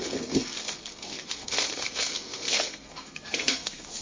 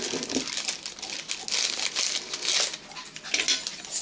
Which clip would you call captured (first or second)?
second